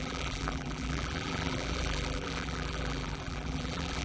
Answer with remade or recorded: remade